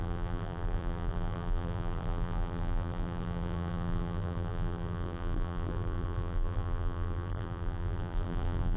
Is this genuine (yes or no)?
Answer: no